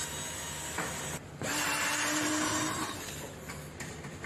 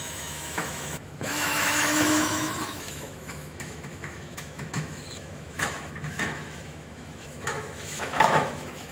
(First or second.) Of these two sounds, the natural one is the first